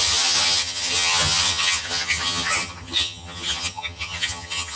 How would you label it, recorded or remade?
remade